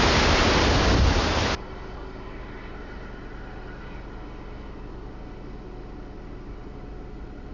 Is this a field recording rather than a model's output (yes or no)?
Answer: yes